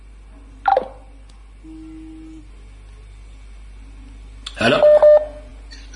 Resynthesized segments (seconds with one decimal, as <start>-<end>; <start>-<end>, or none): none